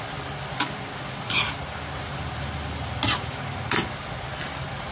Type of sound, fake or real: real